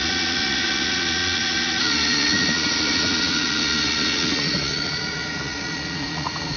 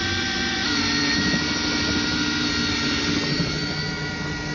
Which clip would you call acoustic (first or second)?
second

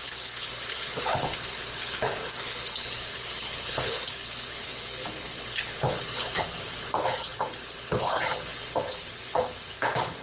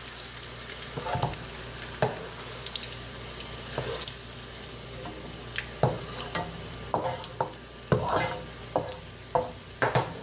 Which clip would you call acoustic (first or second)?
second